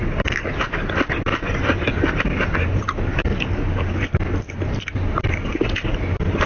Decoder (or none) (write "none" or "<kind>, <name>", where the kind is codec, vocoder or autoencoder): none